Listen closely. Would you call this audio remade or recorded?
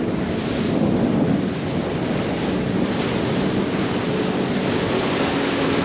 recorded